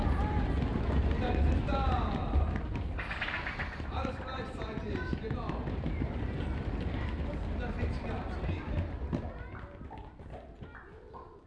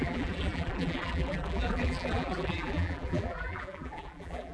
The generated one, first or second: second